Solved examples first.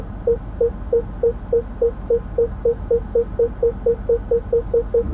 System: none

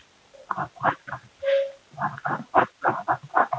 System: none